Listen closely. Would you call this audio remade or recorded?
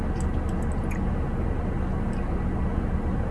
recorded